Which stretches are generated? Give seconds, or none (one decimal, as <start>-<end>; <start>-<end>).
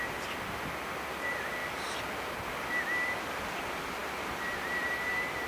none